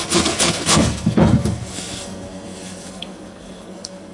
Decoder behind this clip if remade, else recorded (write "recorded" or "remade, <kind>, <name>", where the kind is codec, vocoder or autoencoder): remade, codec, SNAC